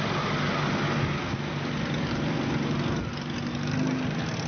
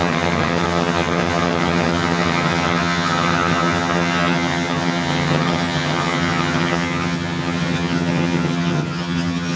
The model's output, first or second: second